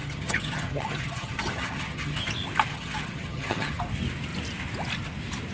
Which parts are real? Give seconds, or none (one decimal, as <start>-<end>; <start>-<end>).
2.3-2.7; 3.8-5.5